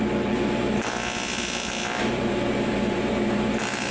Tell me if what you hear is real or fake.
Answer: real